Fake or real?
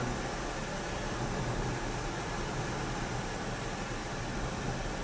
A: real